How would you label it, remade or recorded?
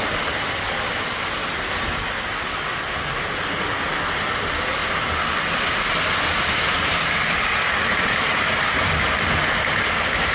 recorded